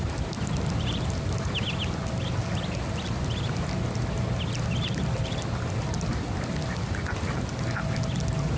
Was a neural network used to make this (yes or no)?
no